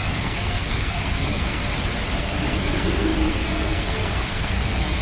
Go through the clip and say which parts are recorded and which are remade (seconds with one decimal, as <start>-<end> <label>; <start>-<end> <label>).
0.0-1.6 remade; 1.6-2.2 recorded; 2.2-5.0 remade